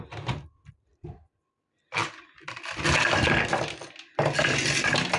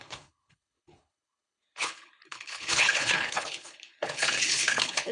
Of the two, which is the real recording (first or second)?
first